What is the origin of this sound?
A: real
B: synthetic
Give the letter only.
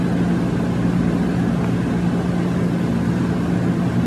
A